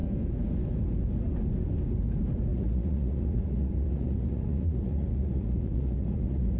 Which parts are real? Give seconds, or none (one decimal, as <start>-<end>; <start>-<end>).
0.0-2.5